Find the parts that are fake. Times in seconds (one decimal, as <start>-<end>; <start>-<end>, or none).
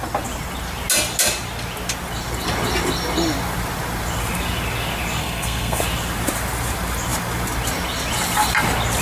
5.2-5.8